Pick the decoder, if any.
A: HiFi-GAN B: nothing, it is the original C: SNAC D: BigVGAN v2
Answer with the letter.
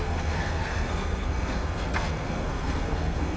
C